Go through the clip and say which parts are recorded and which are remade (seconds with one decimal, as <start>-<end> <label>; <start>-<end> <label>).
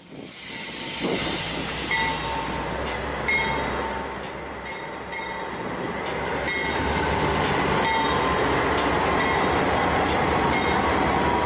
0.0-11.5 recorded